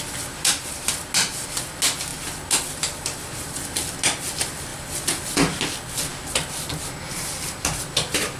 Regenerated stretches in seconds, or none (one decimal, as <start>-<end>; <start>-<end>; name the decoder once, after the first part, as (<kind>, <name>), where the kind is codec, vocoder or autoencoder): none